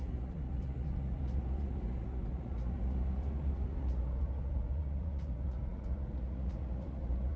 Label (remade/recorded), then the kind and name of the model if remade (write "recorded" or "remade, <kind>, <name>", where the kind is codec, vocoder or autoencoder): remade, vocoder, Vocos